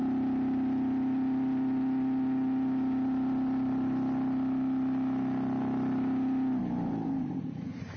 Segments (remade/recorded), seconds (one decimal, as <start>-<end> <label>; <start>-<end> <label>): 0.0-6.6 recorded; 6.6-8.0 remade